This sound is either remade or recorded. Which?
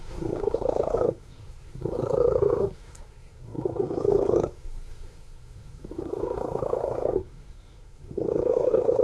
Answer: remade